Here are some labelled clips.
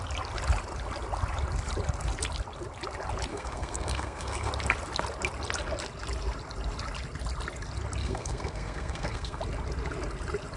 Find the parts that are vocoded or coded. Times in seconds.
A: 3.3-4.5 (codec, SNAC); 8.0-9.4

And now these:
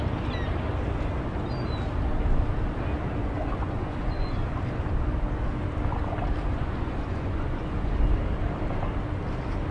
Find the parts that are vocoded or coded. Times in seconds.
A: 3.2-4.5 (vocoder, Vocos); 6.5-7.9

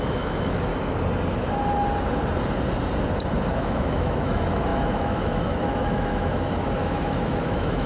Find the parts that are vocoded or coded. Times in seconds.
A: 0.0-0.7 (autoencoder, DAC-VAE); 3.5-7.9

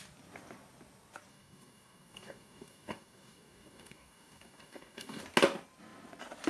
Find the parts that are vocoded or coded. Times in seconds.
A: 1.3-5.2 (codec, DAC)